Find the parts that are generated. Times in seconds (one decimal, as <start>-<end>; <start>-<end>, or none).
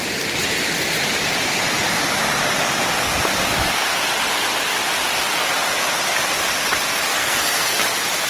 7.1-7.8